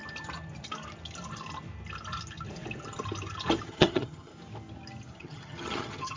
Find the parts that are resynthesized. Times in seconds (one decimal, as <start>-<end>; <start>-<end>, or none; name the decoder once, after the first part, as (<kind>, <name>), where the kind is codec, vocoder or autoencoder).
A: 3.7-4.3 (vocoder, HiFi-GAN); 5.2-6.2